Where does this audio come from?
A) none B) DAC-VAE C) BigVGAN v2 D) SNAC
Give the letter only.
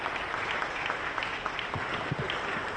A